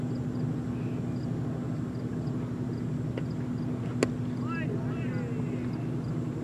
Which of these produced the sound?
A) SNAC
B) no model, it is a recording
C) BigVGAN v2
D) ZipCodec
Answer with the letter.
B